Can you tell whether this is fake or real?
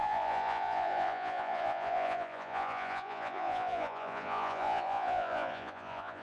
fake